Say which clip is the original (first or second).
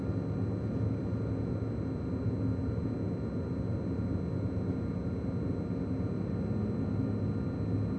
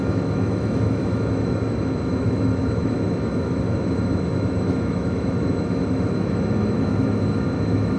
first